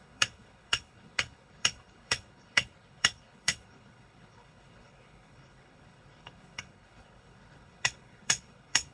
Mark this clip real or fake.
fake